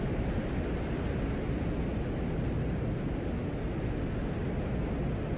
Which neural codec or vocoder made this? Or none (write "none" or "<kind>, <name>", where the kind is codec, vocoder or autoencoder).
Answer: none